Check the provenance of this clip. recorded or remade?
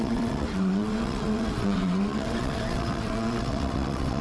remade